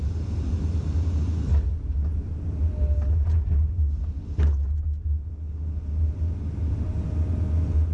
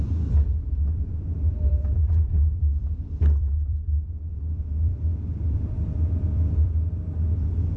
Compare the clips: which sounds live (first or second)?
first